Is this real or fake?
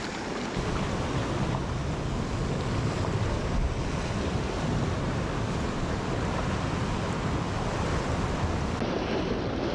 real